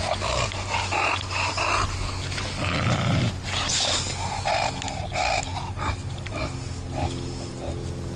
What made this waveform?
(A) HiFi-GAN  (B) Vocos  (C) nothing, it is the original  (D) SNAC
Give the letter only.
C